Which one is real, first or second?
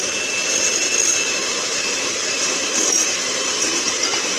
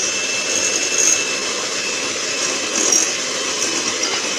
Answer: second